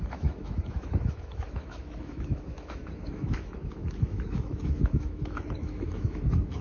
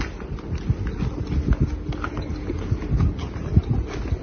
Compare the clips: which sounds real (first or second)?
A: second